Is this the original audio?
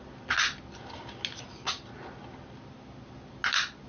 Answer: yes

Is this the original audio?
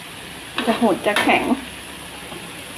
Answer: yes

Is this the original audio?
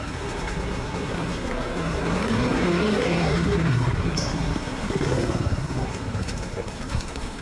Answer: no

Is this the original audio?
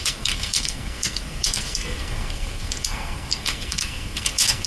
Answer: no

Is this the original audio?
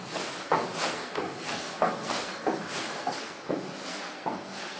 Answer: no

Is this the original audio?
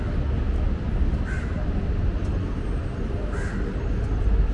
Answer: yes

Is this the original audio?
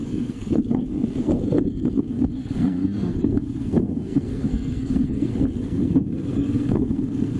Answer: no